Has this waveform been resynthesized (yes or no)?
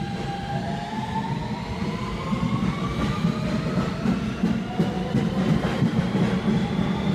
no